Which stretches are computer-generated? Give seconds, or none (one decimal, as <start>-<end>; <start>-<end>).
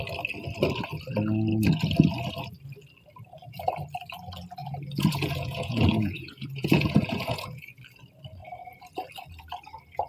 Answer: 4.6-7.8